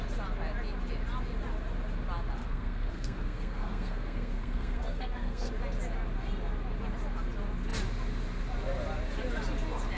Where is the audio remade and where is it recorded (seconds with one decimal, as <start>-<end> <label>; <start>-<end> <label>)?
0.0-2.4 recorded; 2.4-5.5 remade; 5.5-10.0 recorded